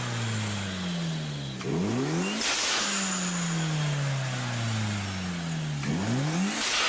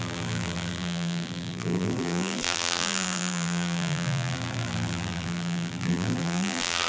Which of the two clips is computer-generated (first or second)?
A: second